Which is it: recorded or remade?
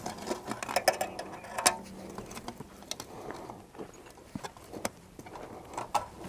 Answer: recorded